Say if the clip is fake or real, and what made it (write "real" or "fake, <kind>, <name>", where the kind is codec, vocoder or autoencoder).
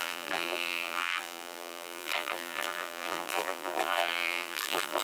fake, vocoder, BigVGAN v2